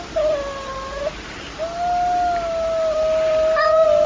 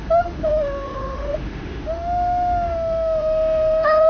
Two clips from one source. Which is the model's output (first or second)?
second